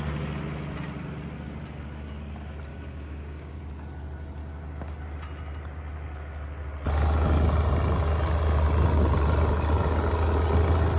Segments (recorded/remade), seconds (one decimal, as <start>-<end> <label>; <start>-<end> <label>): 0.0-2.7 recorded; 2.7-3.6 remade; 3.6-4.4 recorded; 4.4-5.0 remade; 5.0-11.0 recorded